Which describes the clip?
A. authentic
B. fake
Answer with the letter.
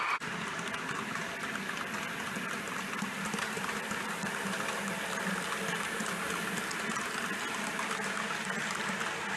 A